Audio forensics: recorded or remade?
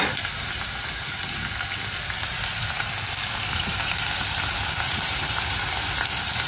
recorded